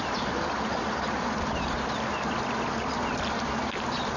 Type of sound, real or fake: real